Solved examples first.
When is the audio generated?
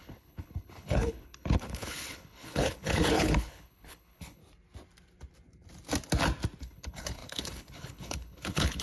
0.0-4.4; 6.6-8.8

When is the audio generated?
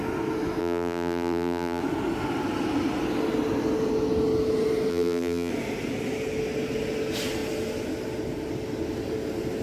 0.6-1.8; 4.9-5.5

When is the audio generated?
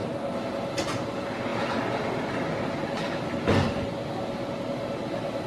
none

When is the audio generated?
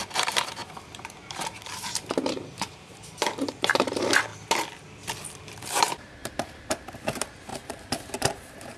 0.0-0.6; 1.2-4.3; 5.5-8.8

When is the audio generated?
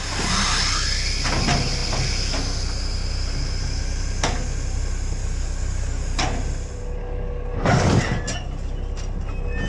5.2-6.2; 7.0-8.0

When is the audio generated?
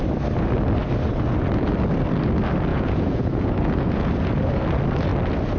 2.7-4.1